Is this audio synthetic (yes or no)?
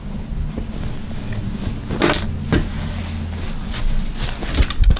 no